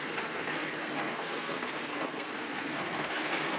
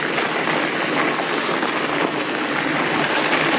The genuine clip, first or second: second